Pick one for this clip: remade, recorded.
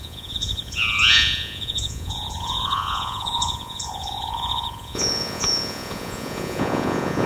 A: remade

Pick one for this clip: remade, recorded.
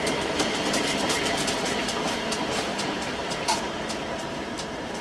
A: remade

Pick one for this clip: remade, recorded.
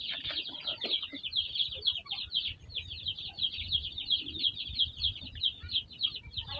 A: recorded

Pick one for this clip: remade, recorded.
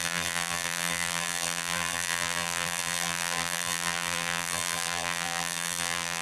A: remade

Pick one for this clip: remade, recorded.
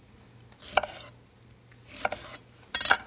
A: recorded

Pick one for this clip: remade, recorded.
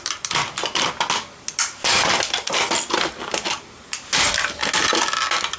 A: recorded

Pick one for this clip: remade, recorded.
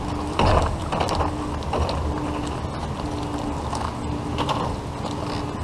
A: recorded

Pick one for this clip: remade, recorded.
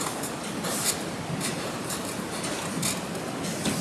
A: recorded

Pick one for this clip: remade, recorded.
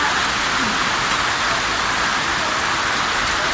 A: recorded